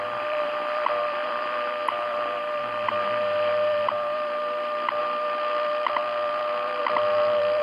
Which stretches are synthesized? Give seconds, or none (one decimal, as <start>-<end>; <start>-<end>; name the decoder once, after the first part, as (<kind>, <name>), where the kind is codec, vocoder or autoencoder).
0.0-7.6 (vocoder, BigVGAN v2)